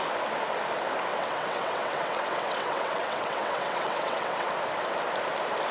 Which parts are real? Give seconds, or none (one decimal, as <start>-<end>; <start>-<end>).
0.0-1.1; 4.5-5.7